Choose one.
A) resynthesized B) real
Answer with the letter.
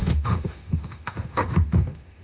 A